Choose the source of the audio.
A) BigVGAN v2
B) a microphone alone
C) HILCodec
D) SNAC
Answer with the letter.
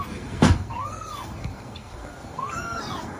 D